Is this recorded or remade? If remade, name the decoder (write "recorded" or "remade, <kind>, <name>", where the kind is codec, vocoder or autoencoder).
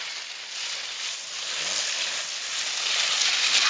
recorded